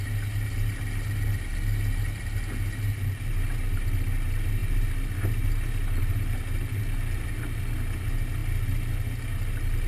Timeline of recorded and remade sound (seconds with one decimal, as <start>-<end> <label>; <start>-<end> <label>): 0.0-9.9 recorded